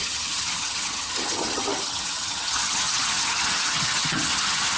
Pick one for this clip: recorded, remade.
remade